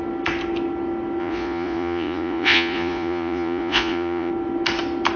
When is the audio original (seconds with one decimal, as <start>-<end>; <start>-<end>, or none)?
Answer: 0.0-1.2; 4.3-5.2